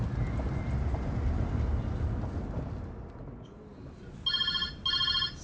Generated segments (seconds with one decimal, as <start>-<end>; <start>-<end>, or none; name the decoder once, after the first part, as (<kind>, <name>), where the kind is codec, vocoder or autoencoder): none